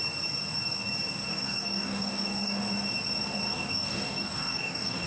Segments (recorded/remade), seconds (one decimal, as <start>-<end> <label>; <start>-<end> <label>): 0.0-1.3 recorded; 1.3-2.6 remade; 2.6-3.5 recorded; 3.5-5.1 remade